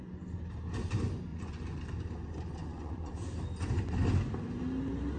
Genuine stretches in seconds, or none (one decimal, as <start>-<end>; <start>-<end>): 0.0-1.3; 1.8-2.6; 3.1-5.2